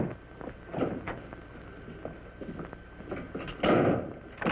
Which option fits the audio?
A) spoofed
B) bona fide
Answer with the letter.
B